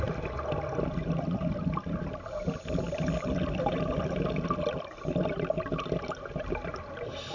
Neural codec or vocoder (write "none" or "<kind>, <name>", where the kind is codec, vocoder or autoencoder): none